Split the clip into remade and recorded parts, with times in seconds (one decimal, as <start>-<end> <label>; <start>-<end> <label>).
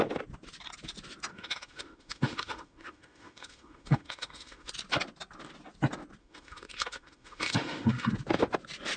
0.0-1.3 recorded; 1.3-4.7 remade; 4.7-6.2 recorded; 6.2-8.1 remade; 8.1-9.0 recorded